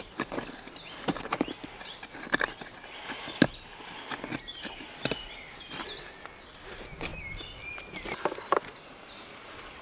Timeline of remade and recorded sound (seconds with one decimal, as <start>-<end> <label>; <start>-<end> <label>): 0.0-9.8 recorded